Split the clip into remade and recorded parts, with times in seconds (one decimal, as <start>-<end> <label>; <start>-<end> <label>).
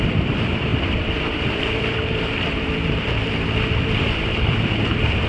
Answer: 0.0-5.3 remade